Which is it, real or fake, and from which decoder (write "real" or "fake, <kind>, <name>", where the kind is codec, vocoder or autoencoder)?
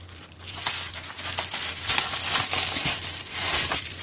fake, vocoder, BigVGAN v2